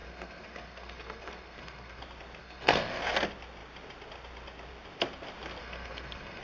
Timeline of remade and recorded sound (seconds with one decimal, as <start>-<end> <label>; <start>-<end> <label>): 0.0-2.0 remade; 2.0-2.4 recorded; 2.4-3.0 remade; 3.0-5.6 recorded; 5.6-6.4 remade